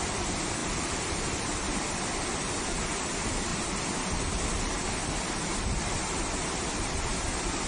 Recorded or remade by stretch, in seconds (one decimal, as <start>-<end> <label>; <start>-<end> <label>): 0.0-3.5 remade; 3.5-5.8 recorded; 5.8-7.7 remade

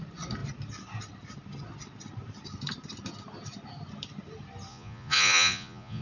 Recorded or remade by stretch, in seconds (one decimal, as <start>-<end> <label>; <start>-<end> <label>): 0.0-4.7 recorded; 4.7-6.0 remade